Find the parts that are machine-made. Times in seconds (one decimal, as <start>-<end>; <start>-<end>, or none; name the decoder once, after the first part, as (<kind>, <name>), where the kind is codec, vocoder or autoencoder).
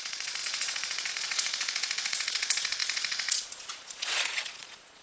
0.0-5.0 (vocoder, Vocos)